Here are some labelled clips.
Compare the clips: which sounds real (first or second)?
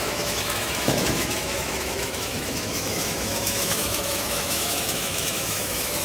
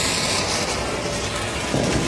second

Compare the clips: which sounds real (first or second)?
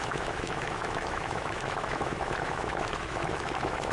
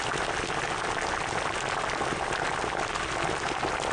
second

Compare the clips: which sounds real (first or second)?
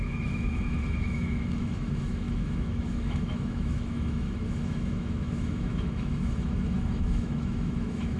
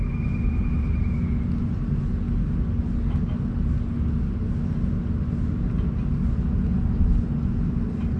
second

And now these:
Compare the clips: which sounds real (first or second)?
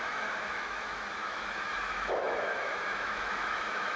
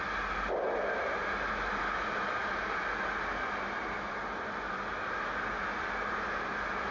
second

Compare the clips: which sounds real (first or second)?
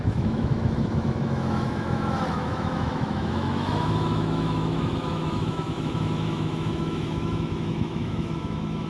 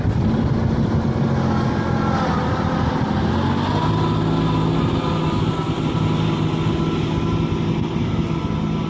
second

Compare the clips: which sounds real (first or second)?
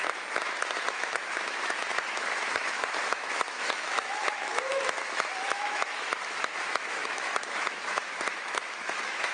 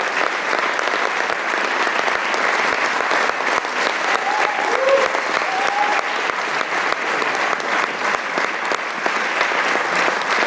second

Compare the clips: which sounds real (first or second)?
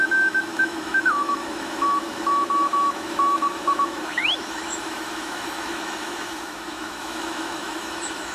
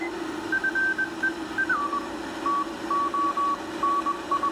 second